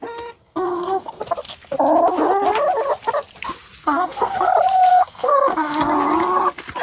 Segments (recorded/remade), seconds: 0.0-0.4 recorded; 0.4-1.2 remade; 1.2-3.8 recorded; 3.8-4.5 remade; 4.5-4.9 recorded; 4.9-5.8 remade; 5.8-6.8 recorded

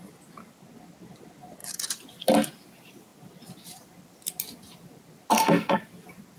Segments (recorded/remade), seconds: 0.0-5.3 recorded; 5.3-5.8 remade; 5.8-6.4 recorded